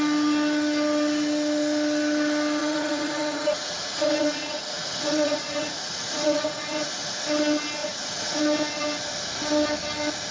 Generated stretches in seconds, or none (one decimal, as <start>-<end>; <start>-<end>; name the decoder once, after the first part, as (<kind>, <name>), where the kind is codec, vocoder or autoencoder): 2.6-7.2 (vocoder, Vocos); 7.8-8.4